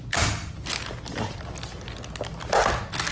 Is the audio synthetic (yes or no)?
no